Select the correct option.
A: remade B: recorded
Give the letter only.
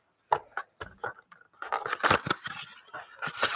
B